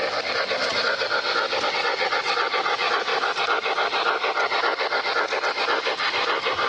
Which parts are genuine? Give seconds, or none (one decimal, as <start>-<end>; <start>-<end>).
0.0-1.7; 3.1-6.7